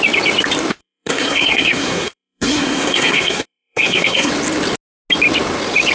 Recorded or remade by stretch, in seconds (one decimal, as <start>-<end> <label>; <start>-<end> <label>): 0.0-0.8 recorded; 0.8-4.3 remade; 4.3-5.9 recorded